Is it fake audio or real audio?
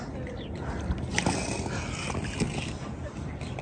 real